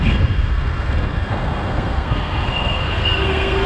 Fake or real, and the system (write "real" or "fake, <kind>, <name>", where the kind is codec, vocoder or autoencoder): fake, codec, SNAC